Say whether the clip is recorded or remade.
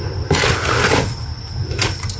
recorded